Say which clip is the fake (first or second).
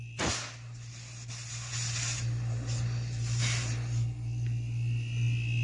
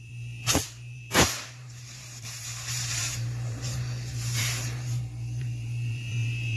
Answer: second